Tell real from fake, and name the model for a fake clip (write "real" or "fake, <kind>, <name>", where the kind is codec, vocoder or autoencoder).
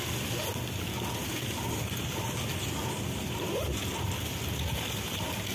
real